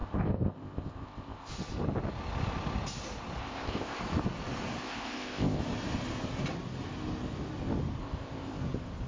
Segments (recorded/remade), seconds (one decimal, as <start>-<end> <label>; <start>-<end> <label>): 0.0-1.5 remade; 1.5-3.4 recorded; 3.4-4.0 remade; 4.0-4.8 recorded; 4.8-5.6 remade; 5.6-8.0 recorded; 8.0-8.6 remade; 8.6-9.1 recorded